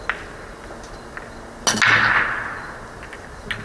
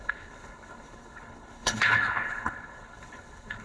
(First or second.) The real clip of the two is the first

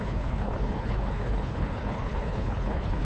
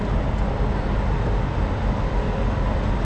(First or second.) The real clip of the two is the second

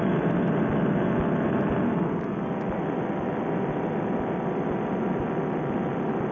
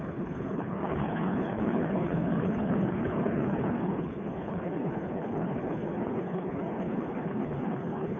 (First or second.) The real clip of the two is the first